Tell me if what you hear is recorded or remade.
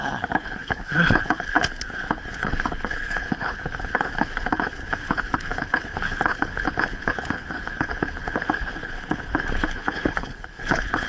remade